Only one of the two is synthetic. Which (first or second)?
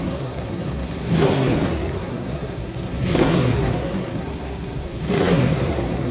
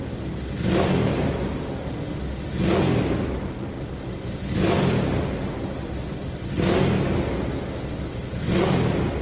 first